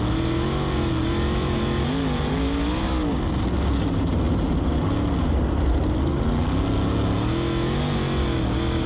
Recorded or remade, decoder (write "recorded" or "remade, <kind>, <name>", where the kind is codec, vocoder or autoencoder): recorded